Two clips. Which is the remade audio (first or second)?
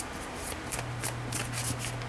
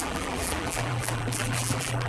second